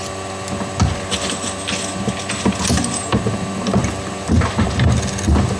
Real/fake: real